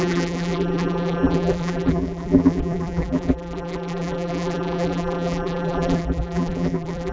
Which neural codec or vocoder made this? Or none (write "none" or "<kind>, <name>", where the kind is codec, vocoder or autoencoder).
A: vocoder, BigVGAN v2